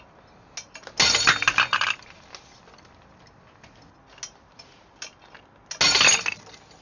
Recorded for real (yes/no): yes